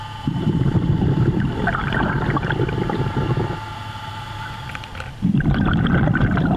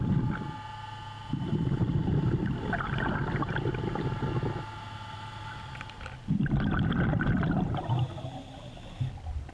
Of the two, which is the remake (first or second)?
first